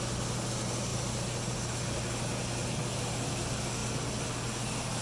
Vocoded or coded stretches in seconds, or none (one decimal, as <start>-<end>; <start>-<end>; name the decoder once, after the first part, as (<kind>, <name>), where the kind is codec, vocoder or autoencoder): none